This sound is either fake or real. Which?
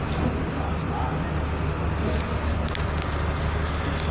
real